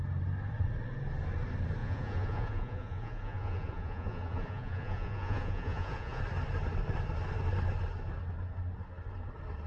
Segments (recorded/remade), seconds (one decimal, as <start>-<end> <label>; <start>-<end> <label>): 0.0-1.8 recorded; 1.8-6.2 remade; 6.2-9.7 recorded